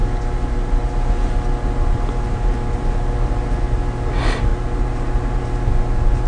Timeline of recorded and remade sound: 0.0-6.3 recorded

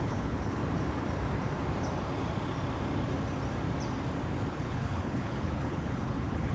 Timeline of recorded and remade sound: 0.0-0.6 remade; 0.6-4.5 recorded; 4.5-6.5 remade

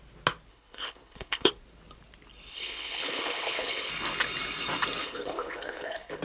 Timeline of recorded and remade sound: 0.0-0.5 recorded; 0.5-1.5 remade; 1.5-2.5 recorded; 2.5-3.9 remade; 3.9-5.0 recorded; 5.0-6.2 remade

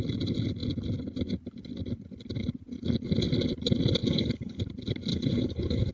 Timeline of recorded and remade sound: 0.0-4.0 recorded; 4.0-4.6 remade; 4.6-5.1 recorded; 5.1-5.9 remade